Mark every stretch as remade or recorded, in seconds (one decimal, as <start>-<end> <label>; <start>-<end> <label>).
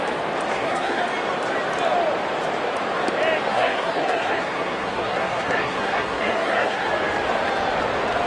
0.0-0.5 recorded; 0.5-1.0 remade; 1.0-3.5 recorded; 3.5-6.9 remade; 6.9-8.3 recorded